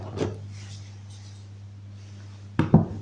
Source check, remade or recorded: remade